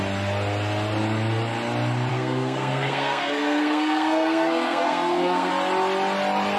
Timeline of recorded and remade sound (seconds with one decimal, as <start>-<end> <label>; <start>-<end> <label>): 0.0-2.1 recorded; 2.1-5.5 remade; 5.5-6.6 recorded